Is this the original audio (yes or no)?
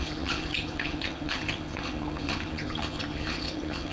no